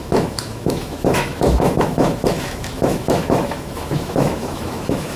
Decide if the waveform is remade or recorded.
remade